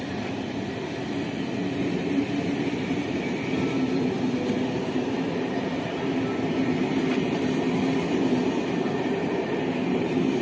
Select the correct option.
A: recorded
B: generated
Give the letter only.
A